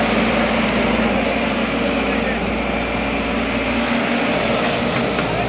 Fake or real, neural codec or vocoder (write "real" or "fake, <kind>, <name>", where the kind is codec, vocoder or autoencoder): real